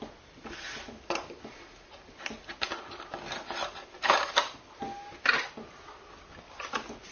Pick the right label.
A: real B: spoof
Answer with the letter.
A